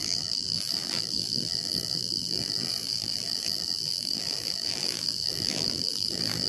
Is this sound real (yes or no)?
no